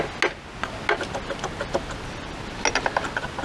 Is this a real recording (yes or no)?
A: yes